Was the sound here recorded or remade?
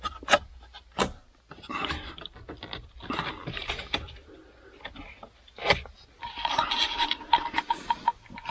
recorded